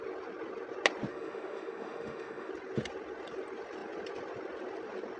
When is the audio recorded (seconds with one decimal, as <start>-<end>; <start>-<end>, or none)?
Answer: 0.0-1.1; 2.5-5.2